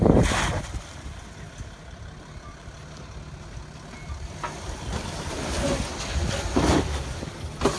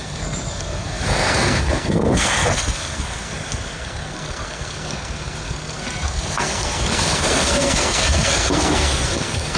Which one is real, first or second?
first